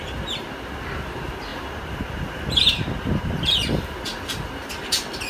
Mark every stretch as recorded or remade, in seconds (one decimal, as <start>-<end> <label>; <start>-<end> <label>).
0.0-5.3 recorded